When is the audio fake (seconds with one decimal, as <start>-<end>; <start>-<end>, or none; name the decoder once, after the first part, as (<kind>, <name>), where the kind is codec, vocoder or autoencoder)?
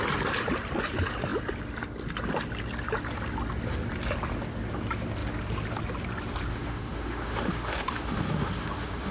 6.5-9.1 (autoencoder, DAC-VAE)